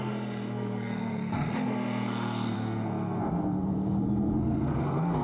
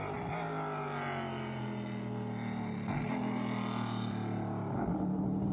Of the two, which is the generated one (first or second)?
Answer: first